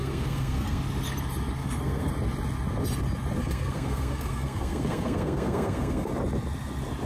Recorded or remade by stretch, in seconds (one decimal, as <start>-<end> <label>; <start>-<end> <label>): 0.0-0.8 remade; 0.8-1.6 recorded; 1.6-2.1 remade; 2.1-3.4 recorded; 3.4-6.1 remade; 6.1-7.1 recorded